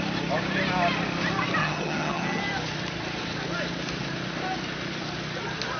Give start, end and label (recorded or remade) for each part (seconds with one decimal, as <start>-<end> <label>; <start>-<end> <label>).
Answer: 0.0-1.6 recorded; 1.6-2.4 remade; 2.4-5.8 recorded